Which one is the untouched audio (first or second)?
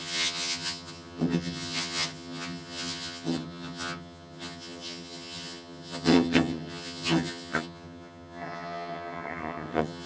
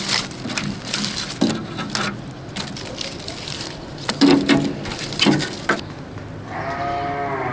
second